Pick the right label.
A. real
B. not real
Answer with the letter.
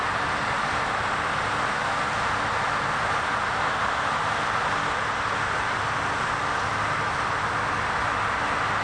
A